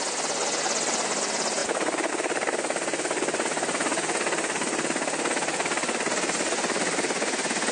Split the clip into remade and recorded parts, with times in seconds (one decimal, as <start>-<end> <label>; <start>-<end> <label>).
0.0-7.7 recorded